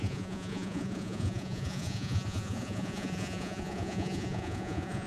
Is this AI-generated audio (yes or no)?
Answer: yes